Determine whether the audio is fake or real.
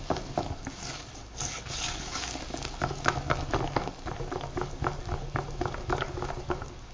fake